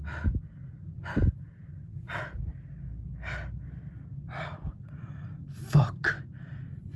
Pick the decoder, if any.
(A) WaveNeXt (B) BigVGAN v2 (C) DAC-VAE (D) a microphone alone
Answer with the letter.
D